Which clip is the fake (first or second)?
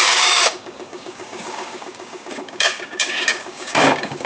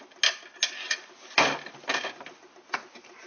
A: first